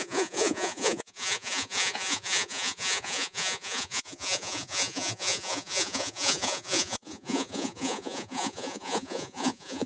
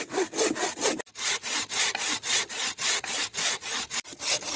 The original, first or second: second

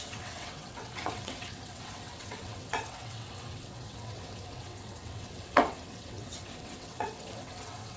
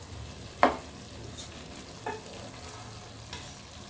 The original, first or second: second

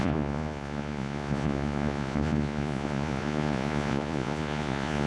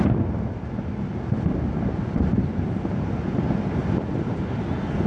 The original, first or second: second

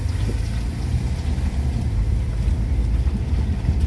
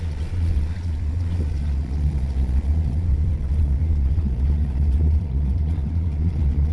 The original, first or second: first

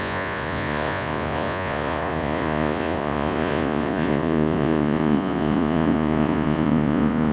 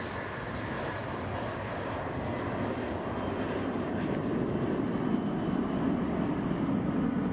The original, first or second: second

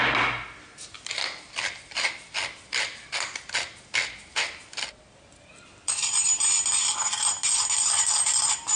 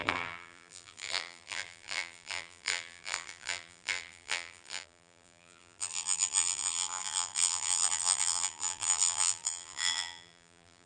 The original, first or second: first